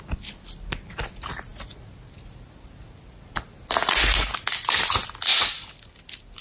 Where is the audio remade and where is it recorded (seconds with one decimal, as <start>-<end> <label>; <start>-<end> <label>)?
0.0-5.3 recorded; 5.3-6.4 remade